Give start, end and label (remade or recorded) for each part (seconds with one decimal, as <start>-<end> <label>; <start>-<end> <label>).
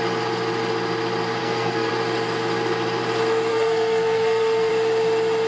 0.0-1.4 recorded; 1.4-1.9 remade; 1.9-3.5 recorded; 3.5-4.7 remade; 4.7-5.5 recorded